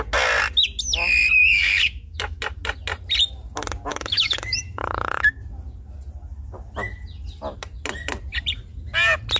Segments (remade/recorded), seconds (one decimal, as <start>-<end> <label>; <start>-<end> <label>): 0.0-1.5 recorded; 1.5-2.4 remade; 2.4-3.9 recorded; 3.9-5.4 remade; 5.4-9.4 recorded